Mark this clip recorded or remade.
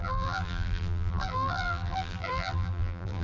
remade